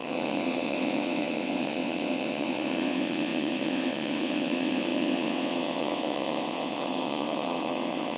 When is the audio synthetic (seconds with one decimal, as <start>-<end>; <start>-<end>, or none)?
0.0-8.2